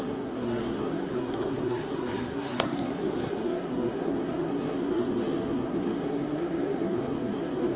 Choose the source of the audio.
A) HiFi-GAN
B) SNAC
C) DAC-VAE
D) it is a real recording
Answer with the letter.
B